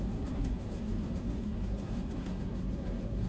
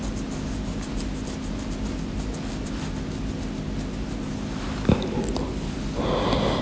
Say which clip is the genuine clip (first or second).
second